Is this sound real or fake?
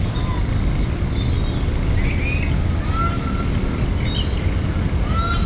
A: real